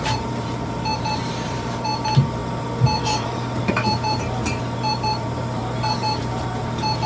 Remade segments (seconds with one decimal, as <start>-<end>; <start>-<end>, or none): 0.0-7.1